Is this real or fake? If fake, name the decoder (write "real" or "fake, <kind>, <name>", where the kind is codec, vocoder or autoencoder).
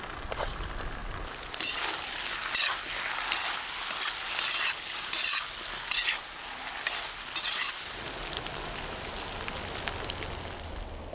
real